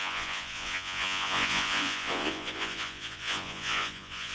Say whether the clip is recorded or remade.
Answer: remade